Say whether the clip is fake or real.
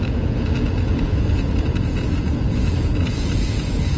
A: fake